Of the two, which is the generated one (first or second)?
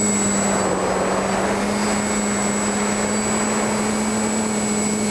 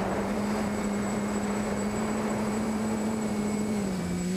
second